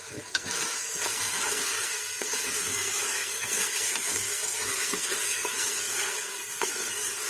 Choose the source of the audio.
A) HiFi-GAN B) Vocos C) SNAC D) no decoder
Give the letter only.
C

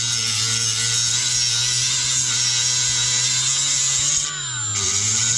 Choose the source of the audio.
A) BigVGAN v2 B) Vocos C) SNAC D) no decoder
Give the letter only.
D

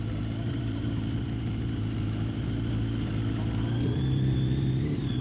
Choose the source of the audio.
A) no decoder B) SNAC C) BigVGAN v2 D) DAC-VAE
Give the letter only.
C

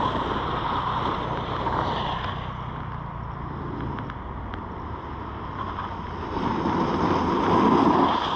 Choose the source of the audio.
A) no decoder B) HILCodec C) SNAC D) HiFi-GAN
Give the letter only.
A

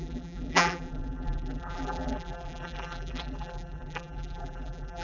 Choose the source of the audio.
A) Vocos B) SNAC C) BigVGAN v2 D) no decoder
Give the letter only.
C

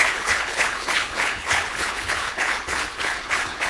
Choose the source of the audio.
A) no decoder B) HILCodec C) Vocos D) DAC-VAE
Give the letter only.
B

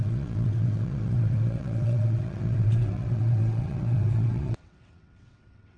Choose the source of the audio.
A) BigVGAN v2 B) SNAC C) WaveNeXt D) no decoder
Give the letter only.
C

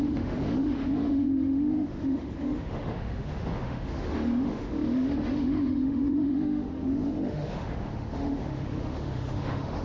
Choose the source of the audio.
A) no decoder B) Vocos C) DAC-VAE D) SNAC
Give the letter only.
C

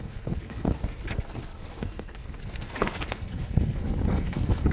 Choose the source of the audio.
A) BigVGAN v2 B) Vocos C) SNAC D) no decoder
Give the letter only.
C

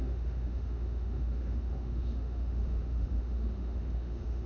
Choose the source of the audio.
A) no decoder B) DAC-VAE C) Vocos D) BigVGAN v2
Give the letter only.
B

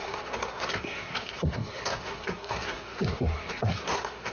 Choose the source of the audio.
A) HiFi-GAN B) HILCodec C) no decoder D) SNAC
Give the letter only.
D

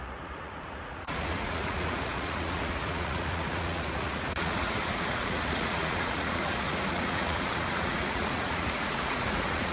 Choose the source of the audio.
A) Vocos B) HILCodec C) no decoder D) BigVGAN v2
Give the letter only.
A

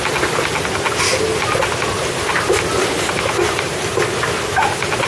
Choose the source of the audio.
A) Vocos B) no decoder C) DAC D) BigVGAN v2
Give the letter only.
B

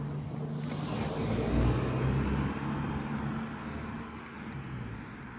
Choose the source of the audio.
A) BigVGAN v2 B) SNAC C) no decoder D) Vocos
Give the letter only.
C